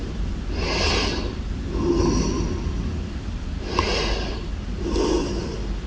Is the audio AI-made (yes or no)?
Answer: no